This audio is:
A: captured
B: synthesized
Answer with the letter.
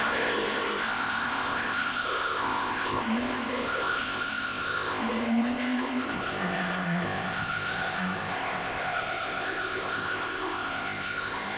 B